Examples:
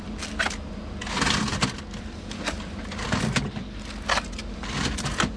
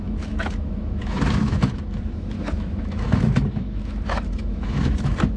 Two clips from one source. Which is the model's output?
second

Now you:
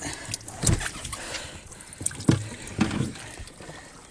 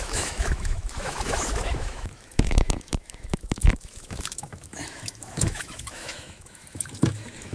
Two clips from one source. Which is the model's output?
second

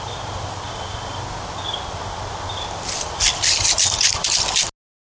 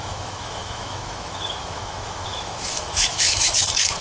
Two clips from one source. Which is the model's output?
second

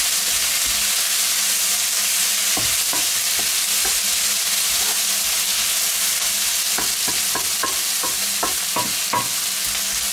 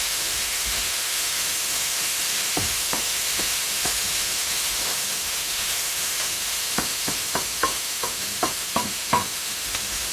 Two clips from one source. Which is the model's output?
second